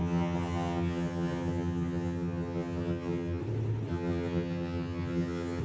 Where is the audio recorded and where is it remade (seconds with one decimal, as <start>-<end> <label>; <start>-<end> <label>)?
0.0-3.4 remade; 3.4-3.9 recorded; 3.9-5.6 remade